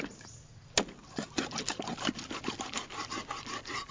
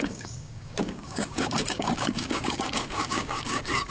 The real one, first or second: first